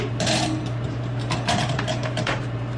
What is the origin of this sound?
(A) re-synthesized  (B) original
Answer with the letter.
A